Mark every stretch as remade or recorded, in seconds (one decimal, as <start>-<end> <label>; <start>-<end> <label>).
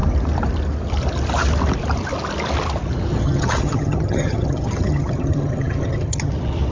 0.0-3.1 recorded; 3.1-6.3 remade; 6.3-6.7 recorded